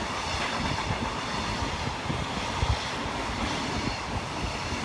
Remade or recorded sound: recorded